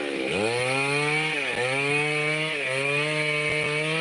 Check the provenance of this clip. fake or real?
real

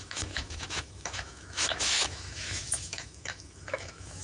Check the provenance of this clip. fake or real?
fake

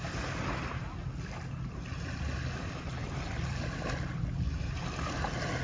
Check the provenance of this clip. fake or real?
real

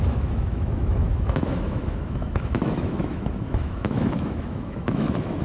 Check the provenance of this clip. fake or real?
fake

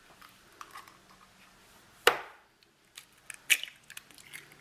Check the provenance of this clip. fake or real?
real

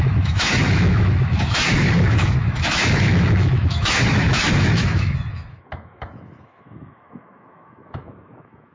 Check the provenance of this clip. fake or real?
fake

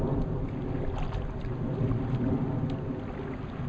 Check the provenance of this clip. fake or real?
real